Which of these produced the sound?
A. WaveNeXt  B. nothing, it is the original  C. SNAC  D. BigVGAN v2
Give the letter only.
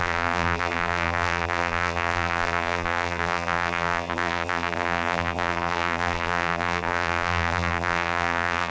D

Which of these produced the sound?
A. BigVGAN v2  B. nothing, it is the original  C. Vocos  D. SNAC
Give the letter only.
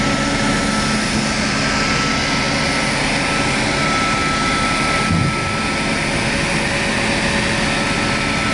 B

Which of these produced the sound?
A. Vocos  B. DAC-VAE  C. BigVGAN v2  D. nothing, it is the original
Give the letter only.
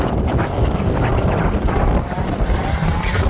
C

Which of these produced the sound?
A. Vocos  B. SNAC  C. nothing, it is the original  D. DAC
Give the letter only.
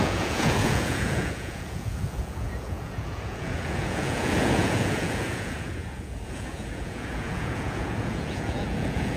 A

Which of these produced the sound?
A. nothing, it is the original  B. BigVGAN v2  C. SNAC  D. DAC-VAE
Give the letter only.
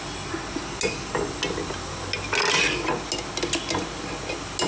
A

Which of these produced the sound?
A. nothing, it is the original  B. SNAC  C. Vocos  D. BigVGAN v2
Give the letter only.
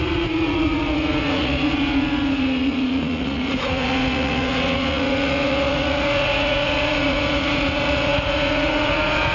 C